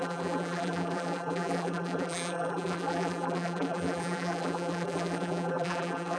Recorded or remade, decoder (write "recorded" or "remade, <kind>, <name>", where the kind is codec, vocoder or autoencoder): remade, vocoder, BigVGAN v2